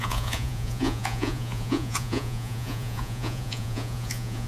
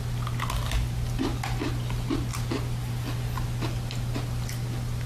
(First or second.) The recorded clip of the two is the second